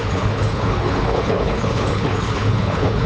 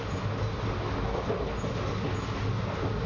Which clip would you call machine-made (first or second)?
first